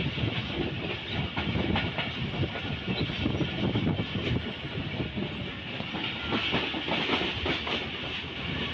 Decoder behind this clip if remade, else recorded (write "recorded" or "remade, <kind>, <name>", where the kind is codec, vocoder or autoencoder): recorded